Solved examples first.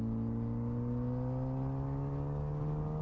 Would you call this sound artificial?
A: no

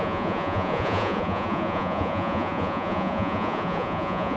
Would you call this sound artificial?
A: yes